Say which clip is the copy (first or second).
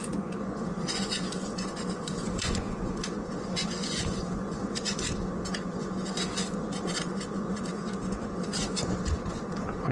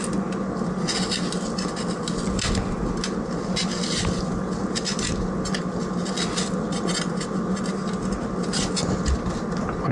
first